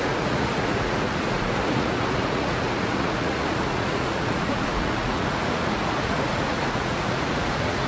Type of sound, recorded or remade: remade